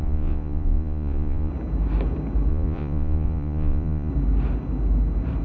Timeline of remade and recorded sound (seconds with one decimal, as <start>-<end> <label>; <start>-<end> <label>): 0.0-1.5 remade; 1.5-2.5 recorded; 2.5-4.1 remade; 4.1-5.4 recorded